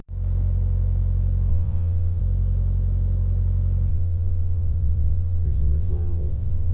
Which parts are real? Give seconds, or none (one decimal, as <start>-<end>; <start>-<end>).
0.0-1.5; 2.2-3.9